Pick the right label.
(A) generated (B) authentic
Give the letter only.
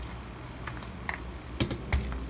B